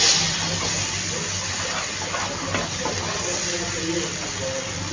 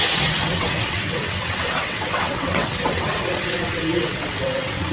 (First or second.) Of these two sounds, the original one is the first